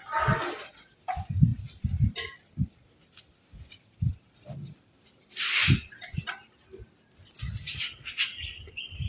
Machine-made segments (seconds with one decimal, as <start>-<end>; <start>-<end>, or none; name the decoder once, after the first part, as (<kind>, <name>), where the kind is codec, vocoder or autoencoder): none